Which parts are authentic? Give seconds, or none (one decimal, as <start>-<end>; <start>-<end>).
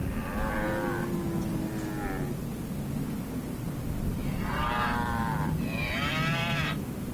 0.0-4.2